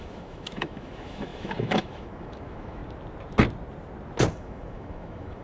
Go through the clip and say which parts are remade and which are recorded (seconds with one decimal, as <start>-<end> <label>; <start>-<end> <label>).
0.0-2.8 remade; 2.8-4.3 recorded; 4.3-5.4 remade